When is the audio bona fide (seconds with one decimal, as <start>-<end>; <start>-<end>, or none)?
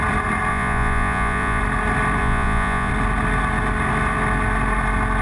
0.0-0.5; 1.6-2.2; 2.9-5.2